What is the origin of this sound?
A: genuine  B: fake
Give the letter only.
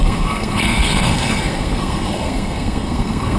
B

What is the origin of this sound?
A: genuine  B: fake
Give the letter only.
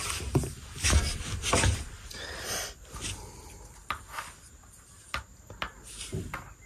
A